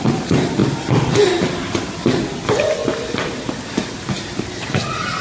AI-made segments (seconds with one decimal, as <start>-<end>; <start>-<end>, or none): none